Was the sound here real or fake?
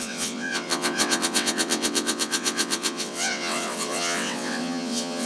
fake